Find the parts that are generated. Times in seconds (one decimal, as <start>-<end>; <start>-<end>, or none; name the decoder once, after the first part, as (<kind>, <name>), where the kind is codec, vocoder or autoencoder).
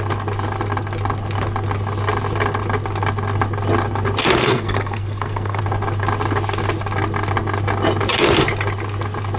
4.4-5.6 (codec, SNAC)